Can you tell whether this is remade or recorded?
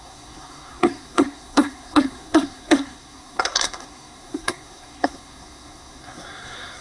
remade